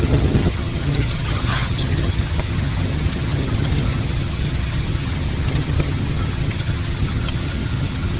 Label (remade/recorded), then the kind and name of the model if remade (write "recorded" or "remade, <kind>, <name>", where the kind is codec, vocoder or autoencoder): remade, vocoder, HiFi-GAN